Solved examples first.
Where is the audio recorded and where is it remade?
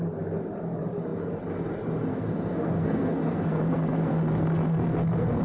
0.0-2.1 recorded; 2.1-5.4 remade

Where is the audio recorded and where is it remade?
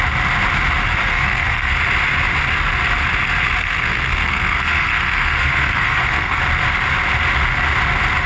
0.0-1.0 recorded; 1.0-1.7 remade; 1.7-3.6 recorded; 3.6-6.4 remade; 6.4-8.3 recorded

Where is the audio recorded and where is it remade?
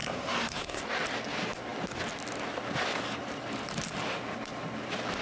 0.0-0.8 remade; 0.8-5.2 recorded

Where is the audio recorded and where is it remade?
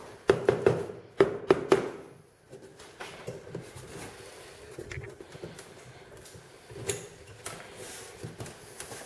0.0-9.1 recorded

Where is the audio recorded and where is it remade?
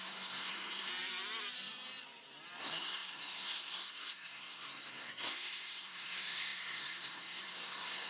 0.0-0.9 remade; 0.9-2.6 recorded; 2.6-8.1 remade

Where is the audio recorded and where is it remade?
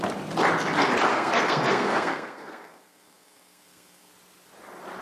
0.0-1.1 recorded; 1.1-4.1 remade; 4.1-5.0 recorded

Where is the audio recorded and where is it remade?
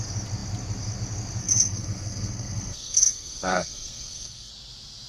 0.0-1.4 recorded; 1.4-4.5 remade; 4.5-5.1 recorded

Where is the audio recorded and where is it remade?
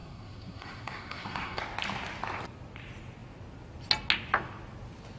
0.0-1.6 remade; 1.6-5.2 recorded